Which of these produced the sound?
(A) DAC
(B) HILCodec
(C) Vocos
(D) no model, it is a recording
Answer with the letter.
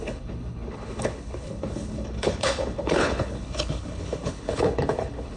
B